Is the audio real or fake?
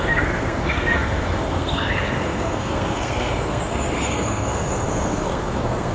fake